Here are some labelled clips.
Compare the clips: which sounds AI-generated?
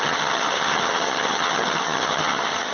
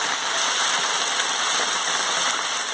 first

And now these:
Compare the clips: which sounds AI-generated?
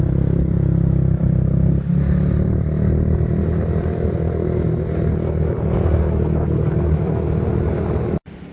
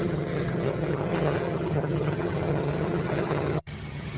second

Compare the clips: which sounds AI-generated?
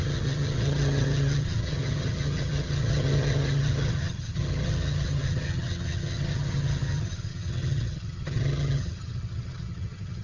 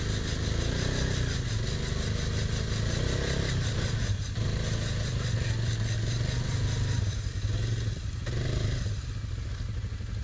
first